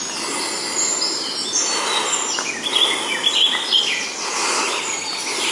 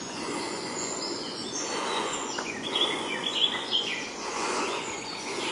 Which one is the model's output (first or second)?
second